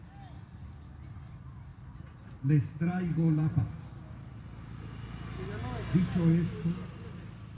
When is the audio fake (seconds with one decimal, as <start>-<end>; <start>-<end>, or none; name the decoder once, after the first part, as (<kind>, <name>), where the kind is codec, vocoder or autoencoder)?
1.7-3.6 (vocoder, BigVGAN v2)

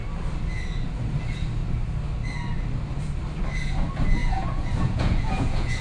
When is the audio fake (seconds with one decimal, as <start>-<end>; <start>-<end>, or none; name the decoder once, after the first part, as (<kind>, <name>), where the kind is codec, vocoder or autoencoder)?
4.2-5.8 (vocoder, Vocos)

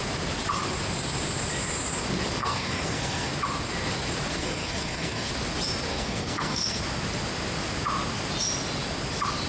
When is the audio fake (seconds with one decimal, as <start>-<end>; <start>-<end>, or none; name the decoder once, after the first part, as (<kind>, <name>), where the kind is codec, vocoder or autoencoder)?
2.4-3.3 (codec, SNAC); 4.3-5.3; 5.9-6.8

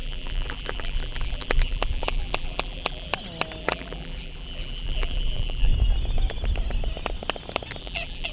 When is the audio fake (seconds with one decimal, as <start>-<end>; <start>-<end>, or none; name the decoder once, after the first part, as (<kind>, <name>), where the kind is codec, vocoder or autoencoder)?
0.0-3.1 (vocoder, BigVGAN v2); 3.6-5.7; 7.8-8.3

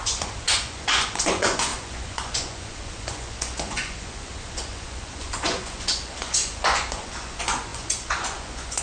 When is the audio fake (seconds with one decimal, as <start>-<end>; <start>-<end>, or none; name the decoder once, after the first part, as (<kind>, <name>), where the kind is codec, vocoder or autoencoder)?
0.0-8.8 (vocoder, Vocos)

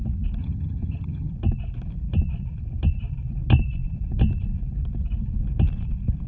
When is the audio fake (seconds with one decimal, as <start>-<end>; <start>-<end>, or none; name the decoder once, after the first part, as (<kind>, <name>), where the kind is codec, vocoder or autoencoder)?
0.4-1.3 (vocoder, HiFi-GAN)